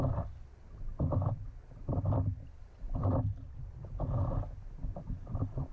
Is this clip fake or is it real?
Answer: real